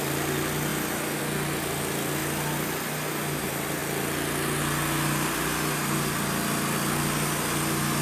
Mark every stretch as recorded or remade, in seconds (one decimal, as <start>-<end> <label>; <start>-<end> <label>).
0.0-8.0 recorded